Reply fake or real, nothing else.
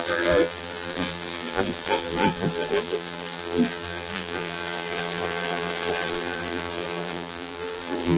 fake